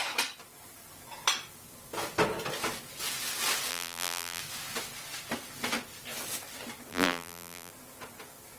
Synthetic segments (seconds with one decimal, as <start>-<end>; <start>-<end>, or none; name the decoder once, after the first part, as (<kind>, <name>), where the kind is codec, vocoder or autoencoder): 3.7-4.4 (vocoder, BigVGAN v2); 6.9-7.7